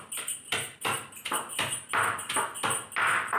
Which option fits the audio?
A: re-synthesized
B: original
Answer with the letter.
B